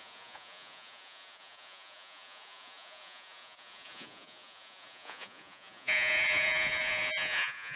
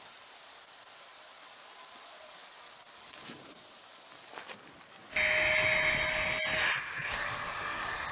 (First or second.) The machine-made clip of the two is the first